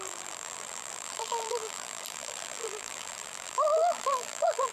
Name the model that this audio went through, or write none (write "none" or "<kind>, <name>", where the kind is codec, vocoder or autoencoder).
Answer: vocoder, BigVGAN v2